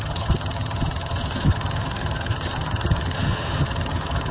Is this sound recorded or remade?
remade